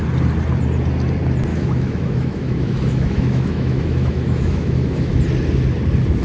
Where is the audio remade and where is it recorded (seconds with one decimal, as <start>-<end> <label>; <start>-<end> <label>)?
0.0-1.5 recorded; 1.5-5.2 remade; 5.2-6.2 recorded